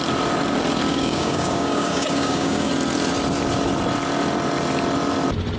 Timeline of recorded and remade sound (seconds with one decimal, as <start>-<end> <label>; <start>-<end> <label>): 0.0-0.9 recorded; 0.9-2.7 remade; 2.7-5.6 recorded